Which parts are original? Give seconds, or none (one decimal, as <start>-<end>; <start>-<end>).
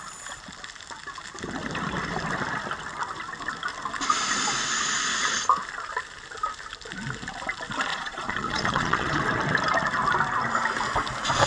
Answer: 0.0-7.9; 9.2-11.5